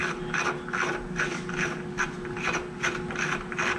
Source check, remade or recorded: recorded